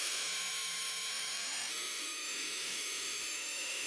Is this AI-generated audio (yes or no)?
yes